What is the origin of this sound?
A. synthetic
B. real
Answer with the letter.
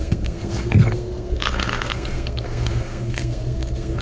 A